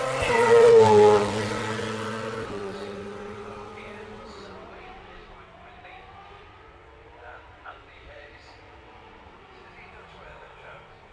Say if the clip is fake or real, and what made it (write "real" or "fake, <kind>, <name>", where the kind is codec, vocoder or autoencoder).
fake, vocoder, WaveNeXt